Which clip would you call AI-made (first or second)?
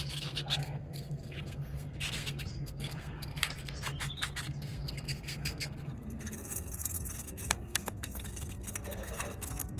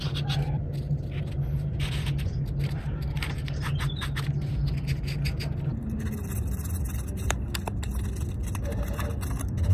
first